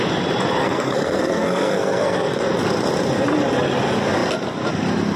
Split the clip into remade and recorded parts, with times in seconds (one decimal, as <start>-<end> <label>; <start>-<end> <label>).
0.0-0.6 recorded; 0.6-2.4 remade; 2.4-5.2 recorded